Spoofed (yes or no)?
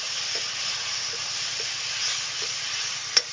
no